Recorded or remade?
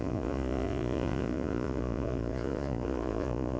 remade